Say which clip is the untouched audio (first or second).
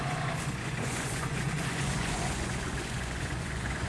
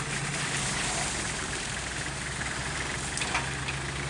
second